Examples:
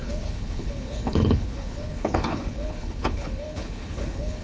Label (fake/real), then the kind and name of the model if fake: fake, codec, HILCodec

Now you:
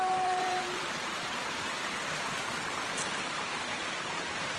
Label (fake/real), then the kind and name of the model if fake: fake, vocoder, BigVGAN v2